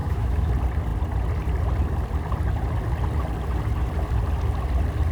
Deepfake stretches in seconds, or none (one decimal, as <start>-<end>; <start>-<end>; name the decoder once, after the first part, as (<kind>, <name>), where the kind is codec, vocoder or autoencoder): 0.0-0.5 (autoencoder, DAC-VAE)